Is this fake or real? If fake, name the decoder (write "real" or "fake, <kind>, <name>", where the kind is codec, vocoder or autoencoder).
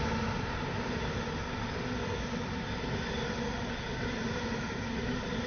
real